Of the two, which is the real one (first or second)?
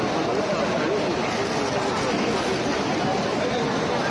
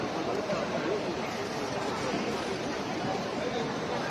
first